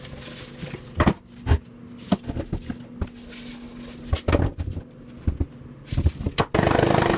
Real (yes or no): yes